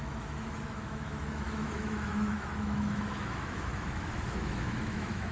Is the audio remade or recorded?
remade